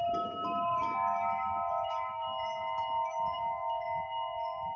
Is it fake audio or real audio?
fake